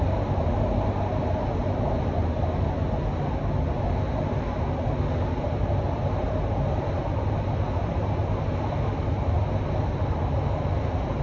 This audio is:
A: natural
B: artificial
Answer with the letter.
A